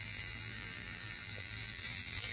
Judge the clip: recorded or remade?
remade